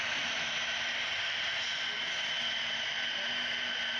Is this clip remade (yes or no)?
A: no